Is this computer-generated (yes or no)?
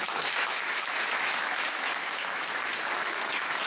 yes